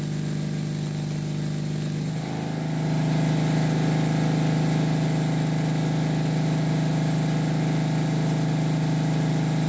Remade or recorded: recorded